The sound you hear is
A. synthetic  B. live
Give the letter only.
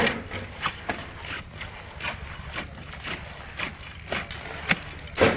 B